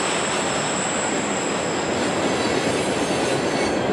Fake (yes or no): no